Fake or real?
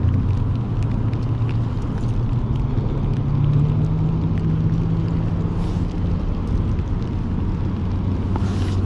real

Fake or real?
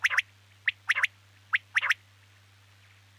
real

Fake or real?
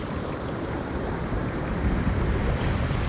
real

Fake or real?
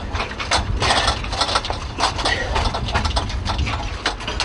real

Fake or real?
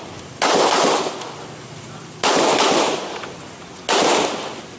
real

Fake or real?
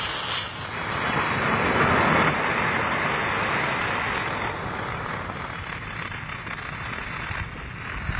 real